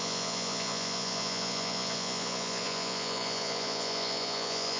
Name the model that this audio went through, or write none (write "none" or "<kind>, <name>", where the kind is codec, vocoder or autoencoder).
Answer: vocoder, Vocos